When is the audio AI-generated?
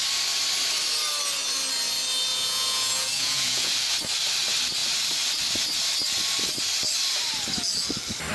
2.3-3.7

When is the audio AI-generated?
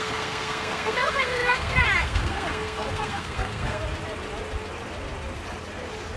0.0-3.8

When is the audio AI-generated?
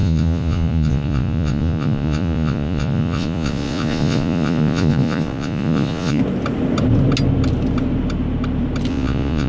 0.0-6.2; 8.9-9.5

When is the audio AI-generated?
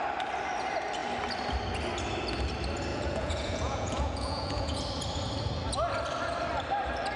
2.9-4.8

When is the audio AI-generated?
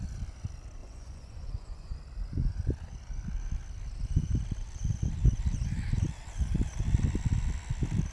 0.8-2.0